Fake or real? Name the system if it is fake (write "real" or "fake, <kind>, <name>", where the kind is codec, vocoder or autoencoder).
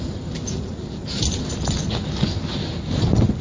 real